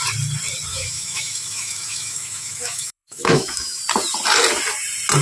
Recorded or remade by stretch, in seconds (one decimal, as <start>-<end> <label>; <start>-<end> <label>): 0.0-0.7 recorded; 0.7-3.8 remade; 3.8-5.2 recorded